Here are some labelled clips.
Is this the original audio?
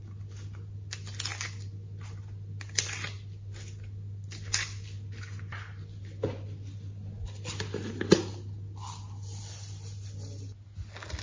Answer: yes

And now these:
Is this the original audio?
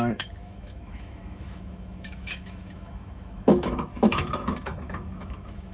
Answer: no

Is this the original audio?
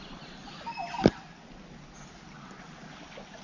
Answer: yes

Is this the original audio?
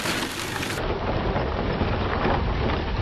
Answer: yes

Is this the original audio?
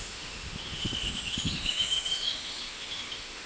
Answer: no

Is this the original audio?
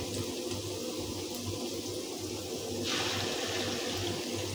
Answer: yes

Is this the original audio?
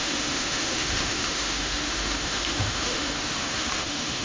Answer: no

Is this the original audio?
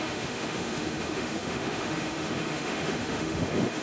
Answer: no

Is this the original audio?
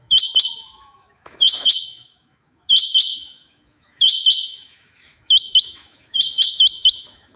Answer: no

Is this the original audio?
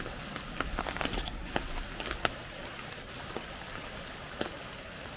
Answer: yes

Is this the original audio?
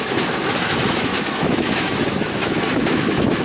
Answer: no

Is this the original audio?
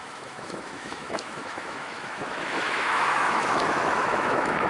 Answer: no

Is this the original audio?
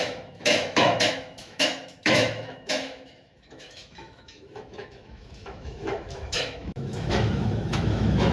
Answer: no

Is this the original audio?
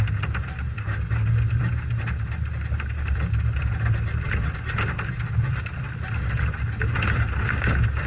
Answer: yes